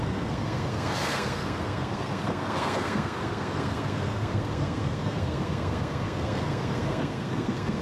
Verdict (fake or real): fake